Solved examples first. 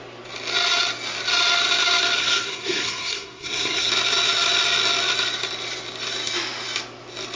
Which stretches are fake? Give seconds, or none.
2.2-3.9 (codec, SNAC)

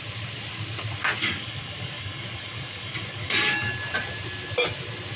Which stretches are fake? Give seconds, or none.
1.2-3.7 (codec, DAC)

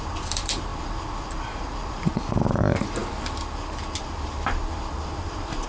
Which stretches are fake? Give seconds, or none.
0.0-3.0 (vocoder, BigVGAN v2); 4.0-5.7

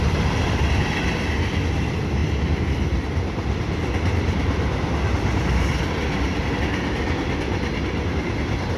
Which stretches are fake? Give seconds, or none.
none

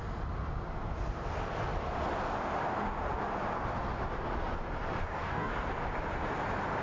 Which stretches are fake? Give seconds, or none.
5.0-5.5 (codec, DAC)